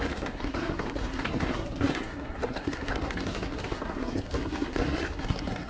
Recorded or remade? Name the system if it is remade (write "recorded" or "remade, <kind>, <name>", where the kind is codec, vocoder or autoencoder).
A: remade, codec, SNAC